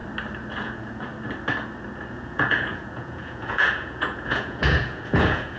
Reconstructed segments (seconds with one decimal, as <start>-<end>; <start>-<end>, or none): 0.6-1.1; 2.1-5.6